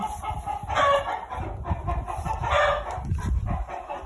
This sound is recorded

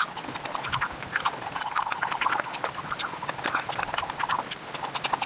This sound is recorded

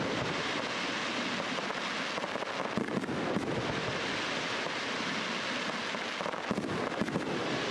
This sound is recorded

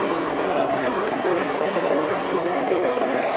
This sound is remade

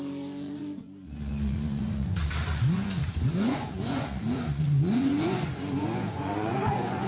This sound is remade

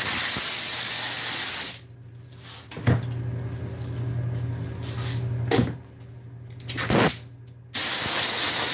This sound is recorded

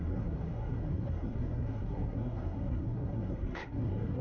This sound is remade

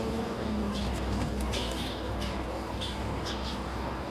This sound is remade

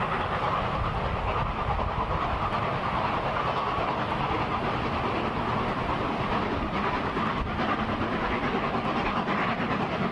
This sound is recorded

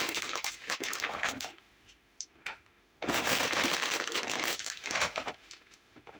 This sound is remade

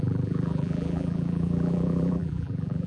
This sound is remade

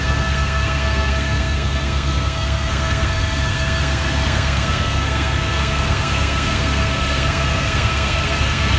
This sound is remade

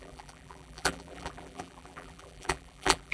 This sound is remade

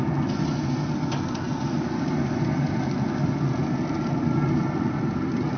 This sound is recorded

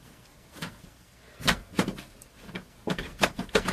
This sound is remade